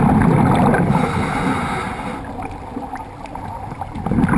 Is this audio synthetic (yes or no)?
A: no